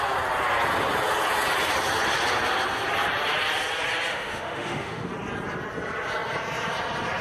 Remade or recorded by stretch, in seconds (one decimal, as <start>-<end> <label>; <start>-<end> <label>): 0.0-4.1 recorded; 4.1-5.1 remade; 5.1-7.2 recorded

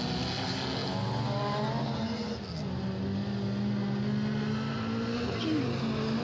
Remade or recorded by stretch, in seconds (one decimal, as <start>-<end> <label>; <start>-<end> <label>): 0.0-6.2 recorded

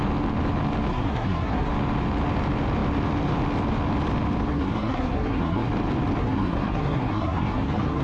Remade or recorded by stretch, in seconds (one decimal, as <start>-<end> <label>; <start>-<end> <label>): 0.0-0.9 recorded; 0.9-1.7 remade; 1.7-4.5 recorded; 4.5-5.7 remade; 5.7-6.2 recorded; 6.2-8.0 remade

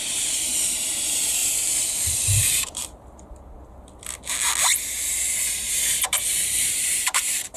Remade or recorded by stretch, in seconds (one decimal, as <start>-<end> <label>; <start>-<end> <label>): 0.0-1.4 remade; 1.4-2.2 recorded; 2.2-2.8 remade; 2.8-5.5 recorded; 5.5-7.6 remade

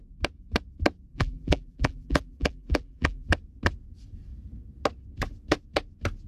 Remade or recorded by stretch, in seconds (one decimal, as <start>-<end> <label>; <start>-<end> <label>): 0.0-1.1 recorded; 1.1-3.3 remade; 3.3-6.3 recorded

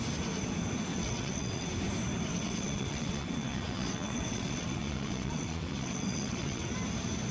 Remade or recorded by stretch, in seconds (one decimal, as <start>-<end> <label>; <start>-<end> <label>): 0.0-0.9 recorded; 0.9-1.7 remade; 1.7-2.3 recorded; 2.3-6.7 remade; 6.7-7.3 recorded